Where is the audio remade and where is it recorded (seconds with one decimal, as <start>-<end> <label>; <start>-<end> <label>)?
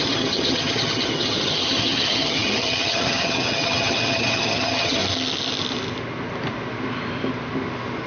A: 0.0-5.0 remade; 5.0-8.1 recorded